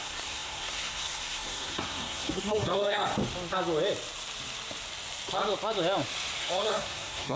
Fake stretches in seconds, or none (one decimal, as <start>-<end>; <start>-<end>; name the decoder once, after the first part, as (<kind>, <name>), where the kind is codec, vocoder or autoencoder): 0.0-3.1 (codec, SNAC); 6.4-7.4